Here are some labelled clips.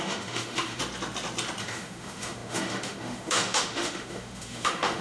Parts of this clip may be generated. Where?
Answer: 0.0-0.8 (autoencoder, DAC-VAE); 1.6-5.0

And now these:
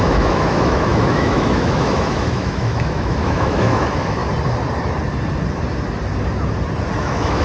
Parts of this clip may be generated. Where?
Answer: 0.0-4.2 (autoencoder, DAC-VAE); 7.0-7.4

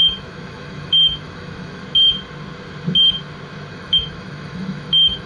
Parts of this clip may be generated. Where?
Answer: 0.0-1.8 (autoencoder, DAC-VAE); 3.7-5.3

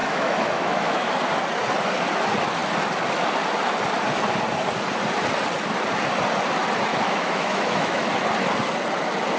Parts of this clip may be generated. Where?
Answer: 0.0-1.1 (autoencoder, DAC-VAE); 6.9-8.1

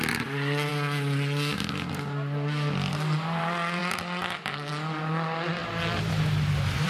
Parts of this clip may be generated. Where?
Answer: none